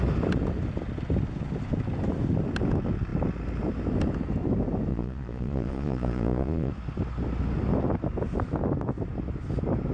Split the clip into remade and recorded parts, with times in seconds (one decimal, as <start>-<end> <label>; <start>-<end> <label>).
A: 0.0-4.9 recorded; 4.9-6.7 remade; 6.7-9.9 recorded